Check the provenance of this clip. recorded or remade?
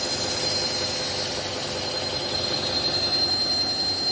recorded